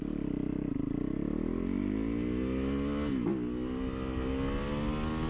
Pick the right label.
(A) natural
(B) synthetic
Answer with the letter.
A